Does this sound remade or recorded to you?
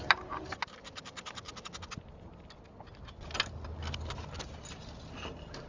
recorded